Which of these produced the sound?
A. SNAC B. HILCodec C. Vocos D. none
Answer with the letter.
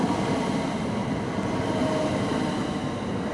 D